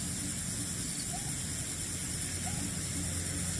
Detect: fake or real real